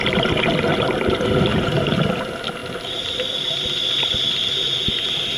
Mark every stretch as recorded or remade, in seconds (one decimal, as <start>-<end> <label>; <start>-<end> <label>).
0.0-1.5 recorded; 1.5-2.2 remade; 2.2-5.4 recorded